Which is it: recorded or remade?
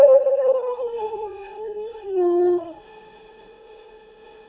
remade